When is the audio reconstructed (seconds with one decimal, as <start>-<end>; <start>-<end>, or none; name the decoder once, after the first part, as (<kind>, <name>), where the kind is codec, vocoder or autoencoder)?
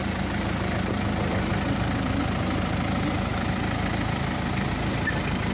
0.0-3.3 (vocoder, BigVGAN v2); 4.7-5.5